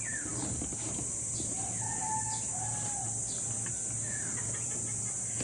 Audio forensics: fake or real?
real